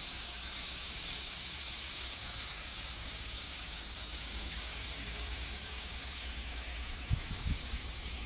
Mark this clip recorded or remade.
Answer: remade